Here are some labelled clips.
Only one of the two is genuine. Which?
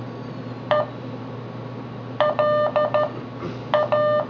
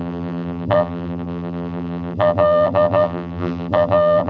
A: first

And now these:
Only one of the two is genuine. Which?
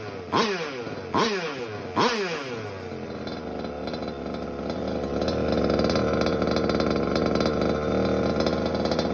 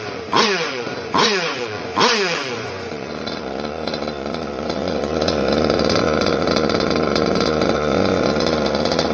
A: first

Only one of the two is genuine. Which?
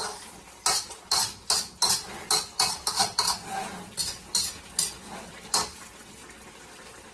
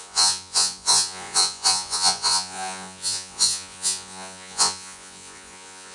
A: first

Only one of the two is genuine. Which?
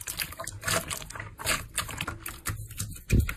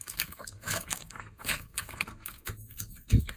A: first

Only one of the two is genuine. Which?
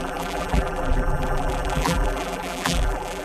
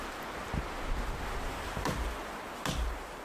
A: second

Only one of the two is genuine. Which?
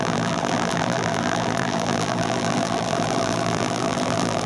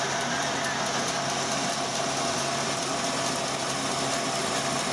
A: second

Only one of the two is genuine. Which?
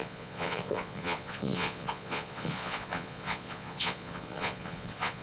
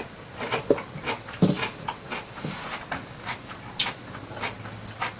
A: second